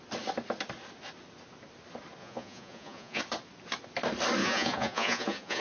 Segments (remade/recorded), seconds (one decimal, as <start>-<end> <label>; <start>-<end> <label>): 0.0-2.2 recorded; 2.2-3.2 remade; 3.2-4.4 recorded; 4.4-5.6 remade